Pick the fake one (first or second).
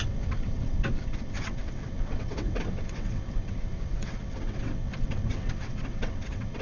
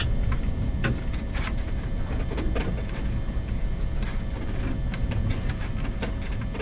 first